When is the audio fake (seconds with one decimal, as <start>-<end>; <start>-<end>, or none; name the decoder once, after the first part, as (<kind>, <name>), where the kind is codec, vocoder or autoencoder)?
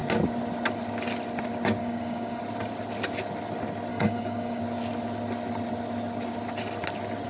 1.8-2.4 (codec, DAC); 3.9-4.6